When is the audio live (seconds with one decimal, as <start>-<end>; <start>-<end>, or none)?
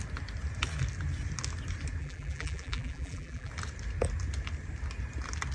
0.0-2.0; 3.5-5.5